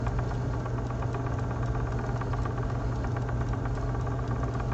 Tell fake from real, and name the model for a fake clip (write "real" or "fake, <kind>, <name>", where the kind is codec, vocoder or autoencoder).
real